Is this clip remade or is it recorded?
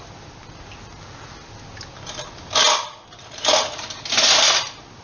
recorded